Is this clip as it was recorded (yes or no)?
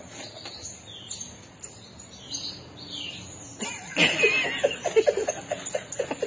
yes